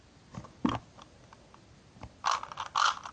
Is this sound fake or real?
real